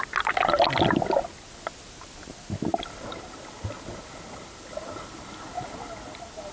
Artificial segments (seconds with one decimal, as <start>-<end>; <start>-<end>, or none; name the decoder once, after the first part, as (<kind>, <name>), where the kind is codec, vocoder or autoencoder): 2.7-3.7 (vocoder, BigVGAN v2)